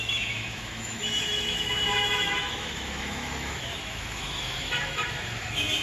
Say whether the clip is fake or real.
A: fake